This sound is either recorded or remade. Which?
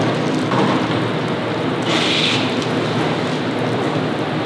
recorded